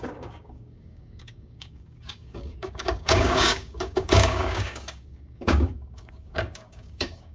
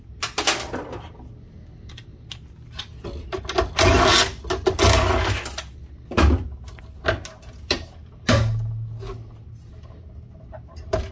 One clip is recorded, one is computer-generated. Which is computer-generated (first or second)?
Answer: first